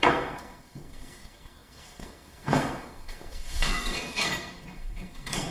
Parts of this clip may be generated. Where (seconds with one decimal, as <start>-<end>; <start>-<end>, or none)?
0.0-5.5